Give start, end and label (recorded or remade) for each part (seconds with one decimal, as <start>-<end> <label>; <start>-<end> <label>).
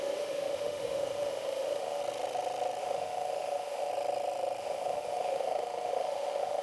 0.0-2.0 remade; 2.0-2.8 recorded; 2.8-3.9 remade; 3.9-4.6 recorded; 4.6-6.6 remade